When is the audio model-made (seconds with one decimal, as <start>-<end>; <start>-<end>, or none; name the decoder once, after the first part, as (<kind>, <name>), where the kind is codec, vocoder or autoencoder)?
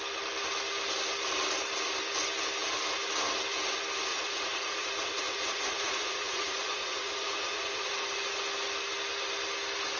4.1-8.1 (vocoder, Vocos)